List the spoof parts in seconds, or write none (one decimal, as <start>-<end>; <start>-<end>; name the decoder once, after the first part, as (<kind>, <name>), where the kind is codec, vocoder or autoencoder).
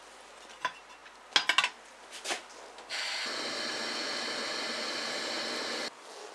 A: none